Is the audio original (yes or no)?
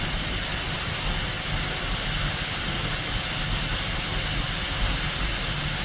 yes